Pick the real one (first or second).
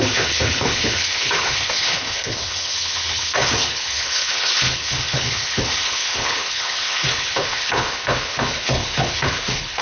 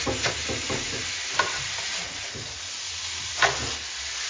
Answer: second